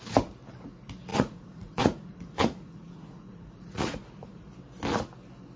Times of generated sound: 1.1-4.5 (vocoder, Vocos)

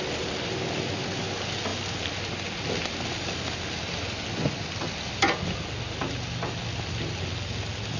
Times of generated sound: none

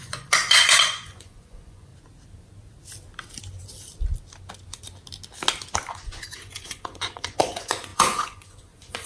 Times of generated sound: 0.0-1.9 (vocoder, Vocos); 5.9-9.1

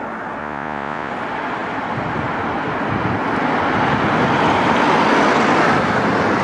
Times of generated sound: 0.4-1.1 (vocoder, Vocos)

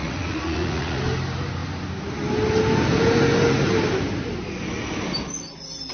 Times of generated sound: 0.0-1.0 (vocoder, Vocos)

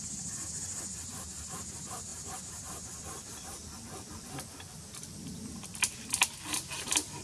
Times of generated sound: none

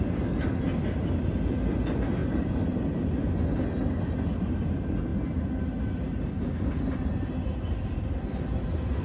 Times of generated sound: none

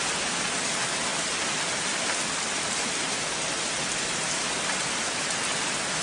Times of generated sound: none